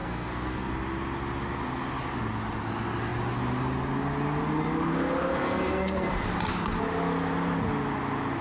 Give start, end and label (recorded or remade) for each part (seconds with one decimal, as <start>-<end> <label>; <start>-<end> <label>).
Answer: 0.0-0.7 remade; 0.7-5.3 recorded; 5.3-6.1 remade; 6.1-8.4 recorded